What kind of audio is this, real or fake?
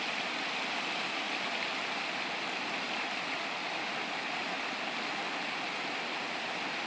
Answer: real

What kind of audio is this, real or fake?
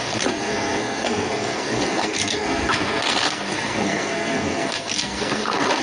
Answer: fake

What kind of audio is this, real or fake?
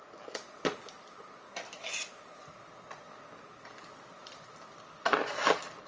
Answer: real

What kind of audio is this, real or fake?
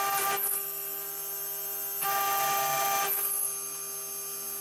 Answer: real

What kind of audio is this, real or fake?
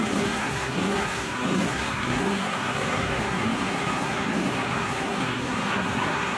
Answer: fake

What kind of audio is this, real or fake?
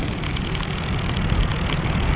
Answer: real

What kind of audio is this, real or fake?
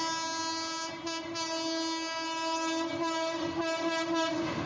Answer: real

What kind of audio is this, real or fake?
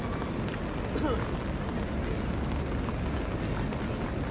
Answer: real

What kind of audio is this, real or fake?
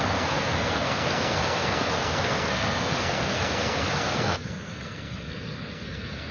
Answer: fake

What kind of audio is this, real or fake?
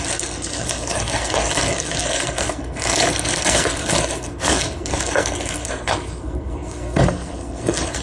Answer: fake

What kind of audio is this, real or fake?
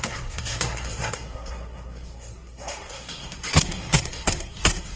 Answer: fake